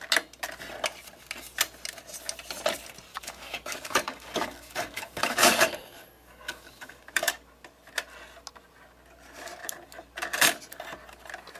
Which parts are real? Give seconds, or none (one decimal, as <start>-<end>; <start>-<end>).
0.0-3.1; 7.3-11.6